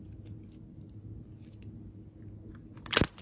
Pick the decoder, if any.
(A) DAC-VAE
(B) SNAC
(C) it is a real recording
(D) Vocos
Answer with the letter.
C